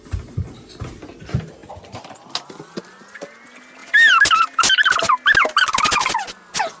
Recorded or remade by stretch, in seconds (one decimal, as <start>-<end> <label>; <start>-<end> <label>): 0.0-6.8 recorded